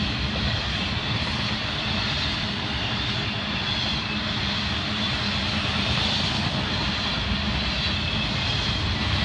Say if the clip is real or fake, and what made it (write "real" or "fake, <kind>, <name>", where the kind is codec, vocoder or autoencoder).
real